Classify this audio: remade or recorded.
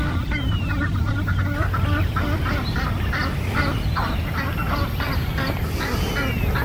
recorded